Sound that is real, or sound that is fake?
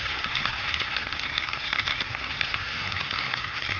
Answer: fake